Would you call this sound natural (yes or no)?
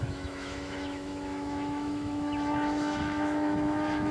no